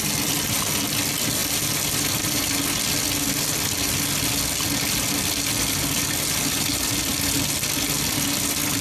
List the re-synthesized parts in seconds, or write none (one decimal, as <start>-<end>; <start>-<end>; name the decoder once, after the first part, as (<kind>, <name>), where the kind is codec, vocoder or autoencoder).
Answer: none